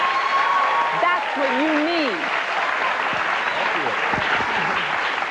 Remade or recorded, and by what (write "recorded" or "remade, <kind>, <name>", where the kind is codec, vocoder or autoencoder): recorded